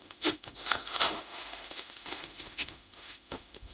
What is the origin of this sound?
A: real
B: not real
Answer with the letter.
B